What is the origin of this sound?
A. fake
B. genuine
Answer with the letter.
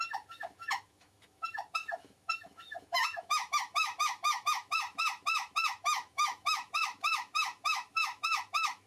A